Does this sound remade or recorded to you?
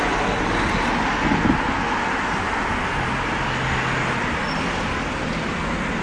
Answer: recorded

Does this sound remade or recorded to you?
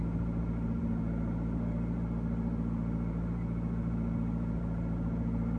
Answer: recorded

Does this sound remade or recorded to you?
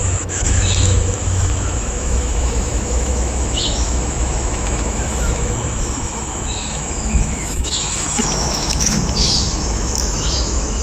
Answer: remade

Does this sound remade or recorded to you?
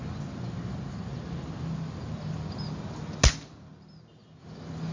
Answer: recorded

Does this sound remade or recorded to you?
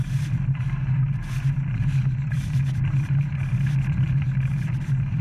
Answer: recorded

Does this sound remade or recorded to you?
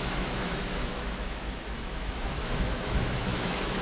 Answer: remade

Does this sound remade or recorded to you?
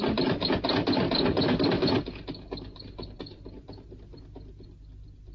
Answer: recorded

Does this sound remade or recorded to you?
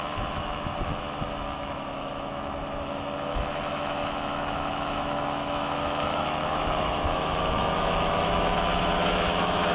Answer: remade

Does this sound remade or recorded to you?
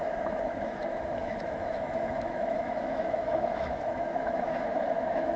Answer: remade